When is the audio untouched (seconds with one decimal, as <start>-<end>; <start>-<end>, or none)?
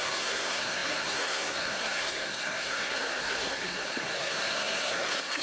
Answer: none